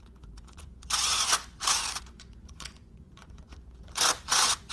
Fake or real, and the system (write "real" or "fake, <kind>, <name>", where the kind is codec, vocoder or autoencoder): fake, vocoder, Vocos